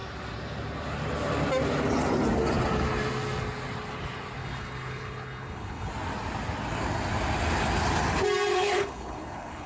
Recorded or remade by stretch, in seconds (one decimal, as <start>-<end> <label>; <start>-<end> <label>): 0.0-4.4 recorded; 4.4-5.9 remade; 5.9-8.5 recorded; 8.5-9.7 remade